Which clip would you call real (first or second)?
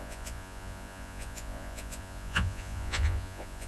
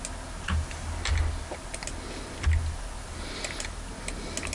second